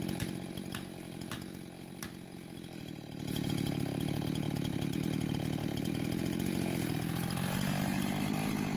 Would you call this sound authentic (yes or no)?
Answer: yes